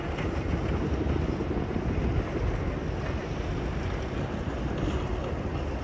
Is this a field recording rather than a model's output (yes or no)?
yes